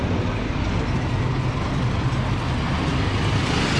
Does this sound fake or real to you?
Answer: real